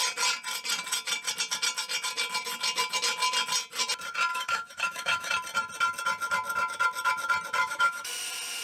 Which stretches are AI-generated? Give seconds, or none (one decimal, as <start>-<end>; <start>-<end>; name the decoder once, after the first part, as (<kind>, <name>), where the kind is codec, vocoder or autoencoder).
4.3-5.3 (autoencoder, DAC-VAE); 7.6-8.1